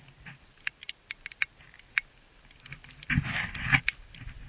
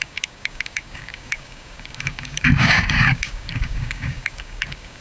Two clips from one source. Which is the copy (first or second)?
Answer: second